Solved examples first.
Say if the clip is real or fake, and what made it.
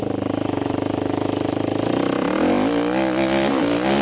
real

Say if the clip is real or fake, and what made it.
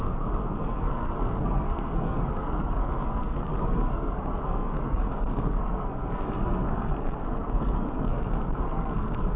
fake, codec, SNAC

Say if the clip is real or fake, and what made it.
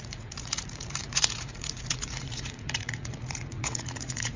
fake, vocoder, Vocos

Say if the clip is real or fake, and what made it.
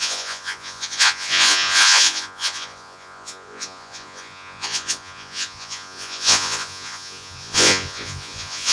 fake, vocoder, Vocos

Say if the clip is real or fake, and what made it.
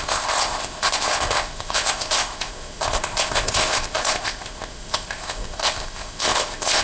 fake, codec, ZipCodec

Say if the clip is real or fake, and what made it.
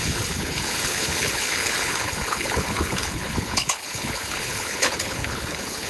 fake, codec, HILCodec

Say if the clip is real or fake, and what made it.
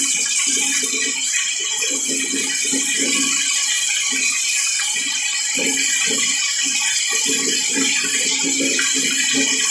real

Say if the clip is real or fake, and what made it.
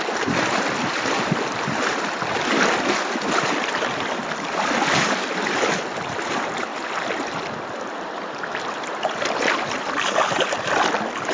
real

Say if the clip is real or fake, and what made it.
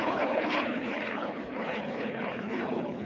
fake, codec, HILCodec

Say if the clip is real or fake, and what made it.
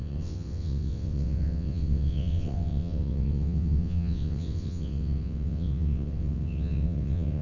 fake, vocoder, WaveNeXt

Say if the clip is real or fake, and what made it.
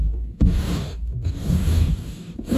fake, codec, DAC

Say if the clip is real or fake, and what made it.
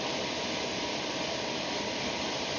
real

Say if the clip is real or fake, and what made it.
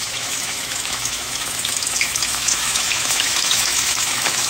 fake, autoencoder, DAC-VAE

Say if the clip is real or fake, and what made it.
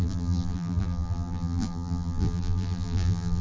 fake, vocoder, BigVGAN v2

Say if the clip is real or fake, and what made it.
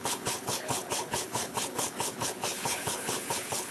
fake, codec, HILCodec